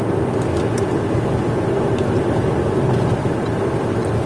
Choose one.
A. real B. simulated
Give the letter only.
A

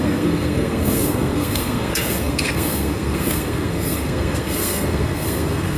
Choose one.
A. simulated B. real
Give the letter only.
A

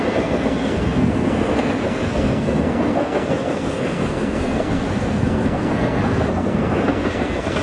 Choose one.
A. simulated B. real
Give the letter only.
A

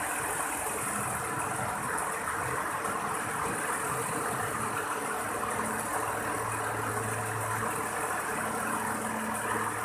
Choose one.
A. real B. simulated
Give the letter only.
A